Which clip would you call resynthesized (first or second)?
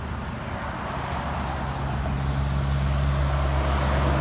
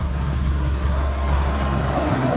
second